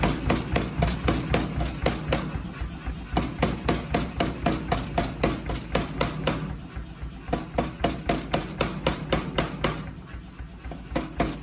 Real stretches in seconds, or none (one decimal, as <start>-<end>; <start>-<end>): 0.0-11.4